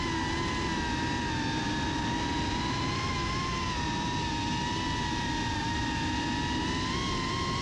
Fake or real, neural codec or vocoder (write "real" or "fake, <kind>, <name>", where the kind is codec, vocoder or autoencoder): real